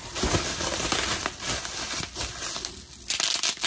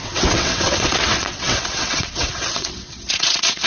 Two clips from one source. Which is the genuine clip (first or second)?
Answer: first